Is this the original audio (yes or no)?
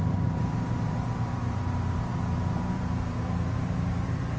no